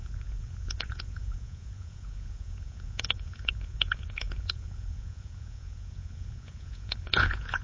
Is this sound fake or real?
fake